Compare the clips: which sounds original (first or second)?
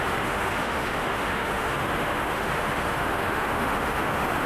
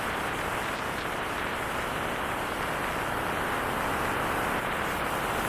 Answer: second